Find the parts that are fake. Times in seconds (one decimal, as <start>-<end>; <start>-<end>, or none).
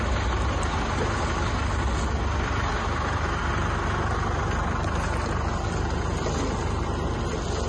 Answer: none